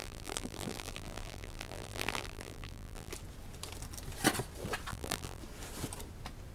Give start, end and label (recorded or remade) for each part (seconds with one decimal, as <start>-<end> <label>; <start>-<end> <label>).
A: 0.0-3.1 remade; 3.1-4.9 recorded; 4.9-5.4 remade; 5.4-6.5 recorded